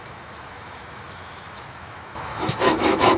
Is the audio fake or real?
fake